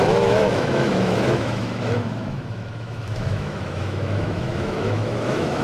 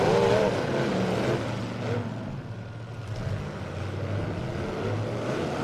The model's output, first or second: first